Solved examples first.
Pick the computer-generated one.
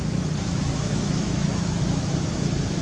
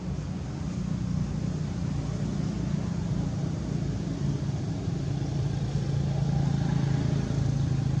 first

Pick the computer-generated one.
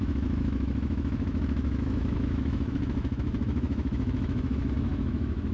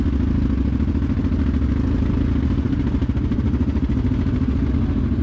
first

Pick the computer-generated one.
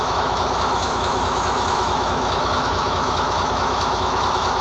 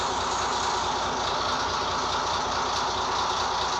first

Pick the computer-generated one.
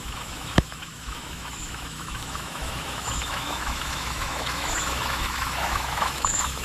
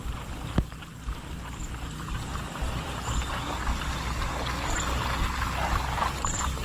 first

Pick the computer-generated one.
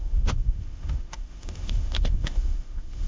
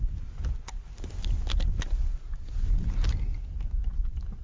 first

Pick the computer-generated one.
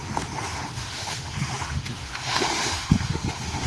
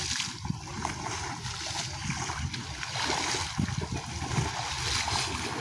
first